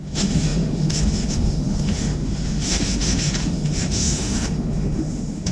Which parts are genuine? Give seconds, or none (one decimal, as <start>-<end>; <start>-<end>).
none